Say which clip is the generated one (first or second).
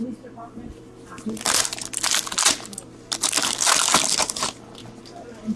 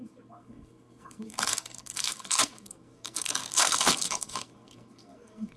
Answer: second